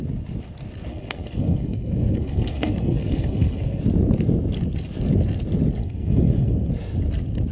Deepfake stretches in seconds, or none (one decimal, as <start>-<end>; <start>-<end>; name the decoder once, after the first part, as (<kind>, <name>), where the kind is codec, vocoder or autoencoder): 0.9-3.8 (codec, SNAC); 5.8-6.5